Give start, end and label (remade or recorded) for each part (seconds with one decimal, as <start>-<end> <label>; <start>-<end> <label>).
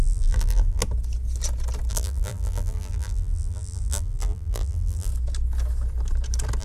0.0-0.8 remade; 0.8-1.9 recorded; 1.9-5.1 remade; 5.1-6.6 recorded